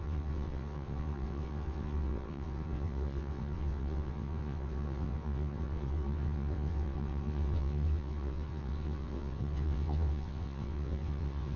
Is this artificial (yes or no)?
yes